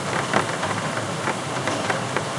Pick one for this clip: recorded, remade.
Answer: recorded